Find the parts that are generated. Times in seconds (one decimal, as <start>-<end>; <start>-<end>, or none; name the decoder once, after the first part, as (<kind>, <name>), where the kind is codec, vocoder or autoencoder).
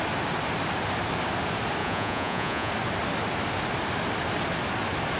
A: 1.8-2.7 (vocoder, Vocos)